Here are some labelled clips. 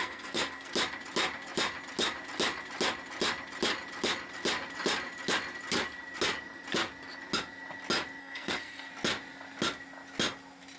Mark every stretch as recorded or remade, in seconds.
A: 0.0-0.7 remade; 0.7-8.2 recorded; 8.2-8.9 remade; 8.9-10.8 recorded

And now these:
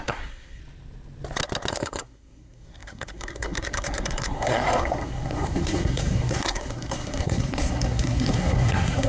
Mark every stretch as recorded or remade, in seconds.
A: 0.0-0.6 remade; 0.6-1.7 recorded; 1.7-9.1 remade

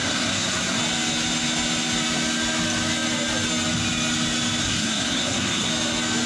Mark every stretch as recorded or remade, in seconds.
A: 0.0-0.8 remade; 0.8-4.6 recorded; 4.6-5.7 remade; 5.7-6.3 recorded

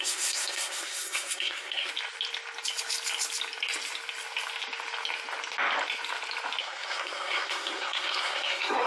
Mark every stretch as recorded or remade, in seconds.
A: 0.0-1.9 remade; 1.9-6.6 recorded; 6.6-8.9 remade

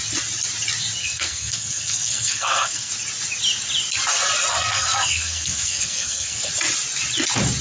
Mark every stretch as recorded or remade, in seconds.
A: 0.0-1.0 recorded; 1.0-2.9 remade; 2.9-4.5 recorded; 4.5-6.5 remade; 6.5-7.6 recorded

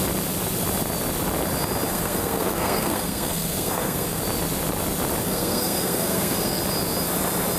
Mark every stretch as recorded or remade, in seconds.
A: 0.0-1.9 recorded; 1.9-4.2 remade; 4.2-5.2 recorded; 5.2-6.6 remade; 6.6-7.6 recorded

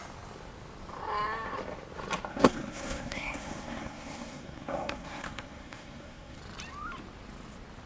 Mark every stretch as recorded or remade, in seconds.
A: 0.0-2.3 recorded; 2.3-6.4 remade; 6.4-7.9 recorded

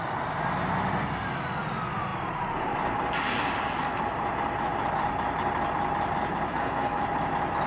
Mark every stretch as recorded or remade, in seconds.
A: 0.0-6.5 recorded; 6.5-7.0 remade; 7.0-7.7 recorded